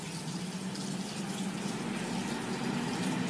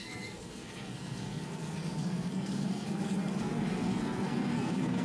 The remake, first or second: second